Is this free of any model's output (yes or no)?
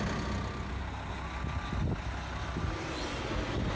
yes